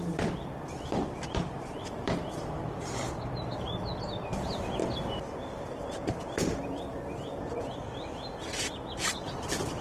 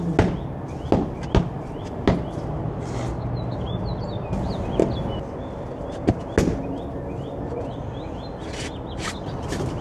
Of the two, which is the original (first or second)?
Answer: second